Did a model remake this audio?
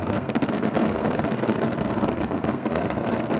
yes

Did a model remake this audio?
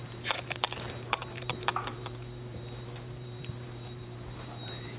yes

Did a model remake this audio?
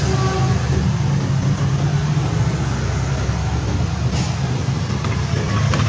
no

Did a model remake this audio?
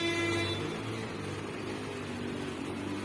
no